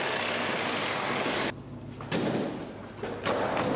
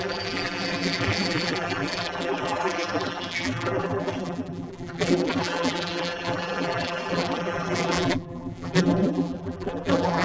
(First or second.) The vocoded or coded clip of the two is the second